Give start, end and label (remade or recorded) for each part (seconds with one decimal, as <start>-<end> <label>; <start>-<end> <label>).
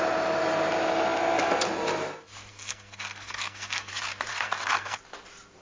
0.0-2.5 recorded; 2.5-3.9 remade; 3.9-4.3 recorded; 4.3-5.0 remade; 5.0-5.6 recorded